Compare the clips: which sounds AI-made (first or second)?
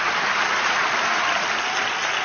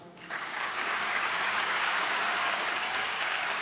second